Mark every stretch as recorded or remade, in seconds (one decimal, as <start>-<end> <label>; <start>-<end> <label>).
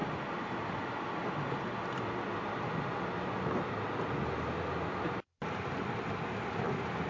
0.0-7.1 recorded